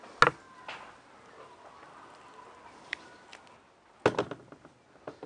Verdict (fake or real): real